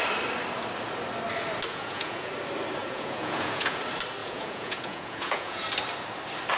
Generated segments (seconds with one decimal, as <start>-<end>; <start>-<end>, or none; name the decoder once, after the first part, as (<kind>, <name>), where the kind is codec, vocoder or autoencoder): 1.7-2.3 (vocoder, Vocos); 2.8-3.8; 4.2-5.6